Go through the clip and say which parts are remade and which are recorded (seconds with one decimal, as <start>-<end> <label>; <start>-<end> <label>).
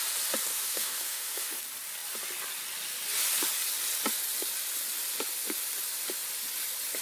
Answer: 0.0-0.5 recorded; 0.5-1.6 remade; 1.6-7.0 recorded